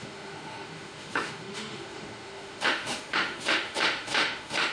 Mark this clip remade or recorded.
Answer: remade